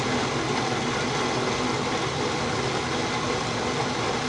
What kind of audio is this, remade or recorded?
recorded